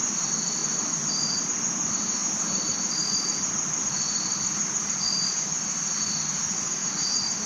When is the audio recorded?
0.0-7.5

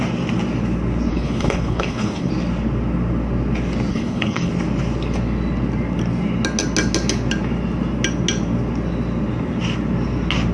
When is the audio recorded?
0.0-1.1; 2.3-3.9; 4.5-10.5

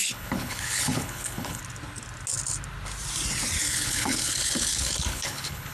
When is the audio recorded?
1.6-3.6

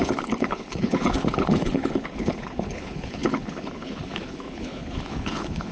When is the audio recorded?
none